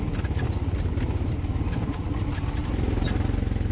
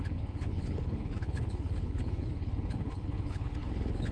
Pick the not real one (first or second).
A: second